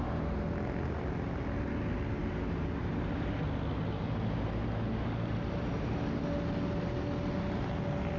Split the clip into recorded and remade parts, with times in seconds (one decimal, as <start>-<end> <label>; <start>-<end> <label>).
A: 0.0-8.2 recorded